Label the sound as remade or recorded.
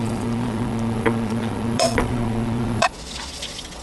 remade